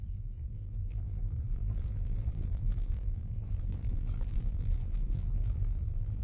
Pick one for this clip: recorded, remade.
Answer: remade